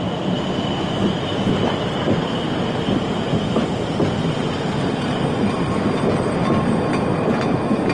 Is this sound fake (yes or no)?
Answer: no